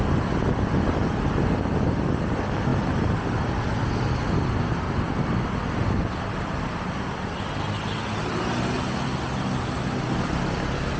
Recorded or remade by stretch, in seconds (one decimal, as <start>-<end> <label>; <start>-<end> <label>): 0.0-11.0 recorded